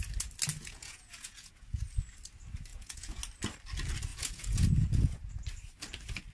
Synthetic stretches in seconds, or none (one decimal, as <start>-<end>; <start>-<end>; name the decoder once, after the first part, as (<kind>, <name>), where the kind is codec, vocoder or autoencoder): 0.5-1.8 (vocoder, Vocos); 2.7-3.2; 4.1-5.3